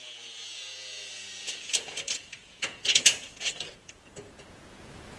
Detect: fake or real fake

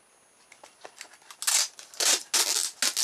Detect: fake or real real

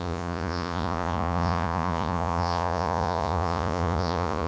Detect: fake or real fake